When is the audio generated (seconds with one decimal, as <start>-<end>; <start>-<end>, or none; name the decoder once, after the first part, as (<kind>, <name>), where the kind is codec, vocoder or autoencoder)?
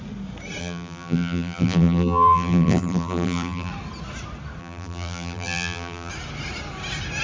0.6-3.7 (vocoder, BigVGAN v2); 4.6-6.1